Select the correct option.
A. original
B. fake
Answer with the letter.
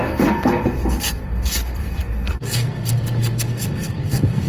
B